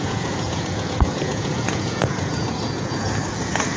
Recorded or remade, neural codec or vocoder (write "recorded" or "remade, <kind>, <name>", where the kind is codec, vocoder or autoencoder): remade, vocoder, Vocos